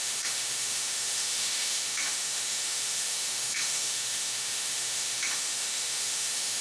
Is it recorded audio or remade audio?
remade